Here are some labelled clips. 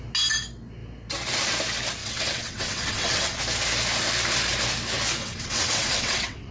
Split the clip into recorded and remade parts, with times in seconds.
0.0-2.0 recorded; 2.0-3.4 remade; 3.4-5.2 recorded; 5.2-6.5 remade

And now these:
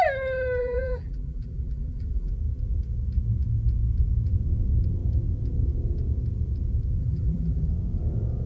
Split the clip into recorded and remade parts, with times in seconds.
0.0-0.6 recorded; 0.6-2.3 remade; 2.3-7.0 recorded; 7.0-7.7 remade; 7.7-8.5 recorded

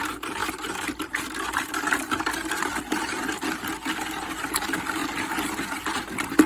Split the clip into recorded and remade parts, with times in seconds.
0.0-0.4 recorded; 0.4-3.0 remade; 3.0-6.5 recorded

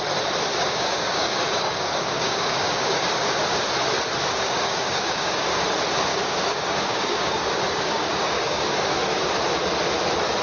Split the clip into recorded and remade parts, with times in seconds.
0.0-0.5 recorded; 0.5-3.6 remade; 3.6-4.3 recorded; 4.3-5.6 remade; 5.6-6.1 recorded; 6.1-9.2 remade; 9.2-10.4 recorded

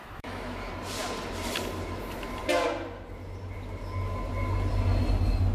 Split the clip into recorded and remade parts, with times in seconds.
0.0-0.7 remade; 0.7-5.5 recorded